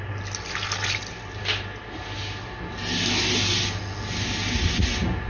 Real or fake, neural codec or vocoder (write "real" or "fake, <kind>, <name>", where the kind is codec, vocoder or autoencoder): real